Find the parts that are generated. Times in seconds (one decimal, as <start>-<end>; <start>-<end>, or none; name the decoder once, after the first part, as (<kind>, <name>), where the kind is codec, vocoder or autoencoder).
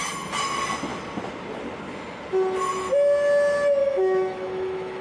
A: 3.8-5.0 (autoencoder, DAC-VAE)